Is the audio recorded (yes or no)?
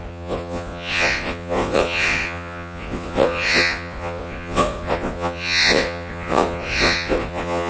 no